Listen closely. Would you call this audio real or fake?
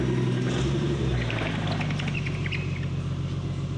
real